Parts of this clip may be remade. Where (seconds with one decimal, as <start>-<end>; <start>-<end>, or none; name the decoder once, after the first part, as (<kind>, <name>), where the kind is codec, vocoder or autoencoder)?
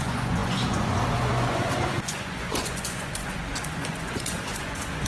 0.0-5.1 (vocoder, Vocos)